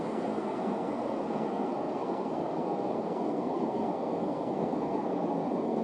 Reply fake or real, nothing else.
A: fake